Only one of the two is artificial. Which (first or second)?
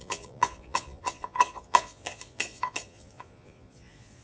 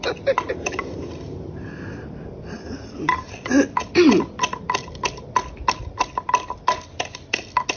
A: first